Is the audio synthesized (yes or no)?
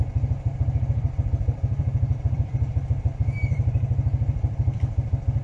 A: yes